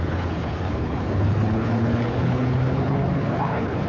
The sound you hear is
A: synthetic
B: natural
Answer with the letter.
A